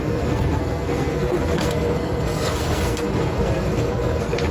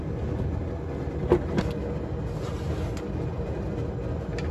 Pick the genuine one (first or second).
second